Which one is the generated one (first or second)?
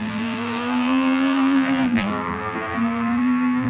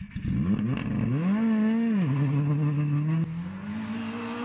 first